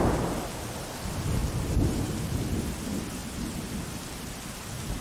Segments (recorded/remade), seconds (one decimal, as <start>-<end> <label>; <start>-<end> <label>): 0.0-1.4 recorded; 1.4-2.6 remade; 2.6-3.2 recorded; 3.2-3.9 remade; 3.9-5.0 recorded